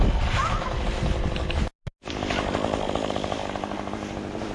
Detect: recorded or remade recorded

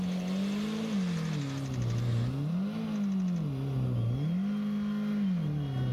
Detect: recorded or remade recorded